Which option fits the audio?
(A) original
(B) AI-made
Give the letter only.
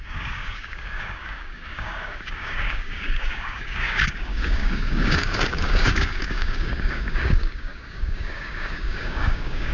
B